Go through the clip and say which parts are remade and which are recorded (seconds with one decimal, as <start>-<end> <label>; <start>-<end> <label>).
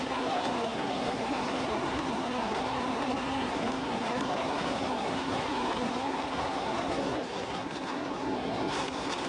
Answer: 0.0-9.3 remade